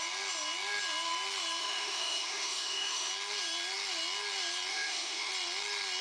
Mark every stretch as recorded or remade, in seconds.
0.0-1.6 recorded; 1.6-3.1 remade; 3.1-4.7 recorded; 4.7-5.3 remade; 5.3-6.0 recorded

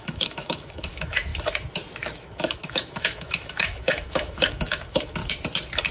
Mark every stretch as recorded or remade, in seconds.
0.0-1.3 remade; 1.3-2.2 recorded; 2.2-5.2 remade; 5.2-5.9 recorded